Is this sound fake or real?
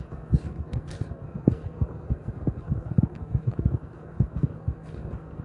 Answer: fake